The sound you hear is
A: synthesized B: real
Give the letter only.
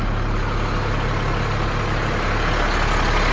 B